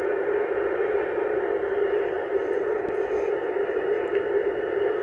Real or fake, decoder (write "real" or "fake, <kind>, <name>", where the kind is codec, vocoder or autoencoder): real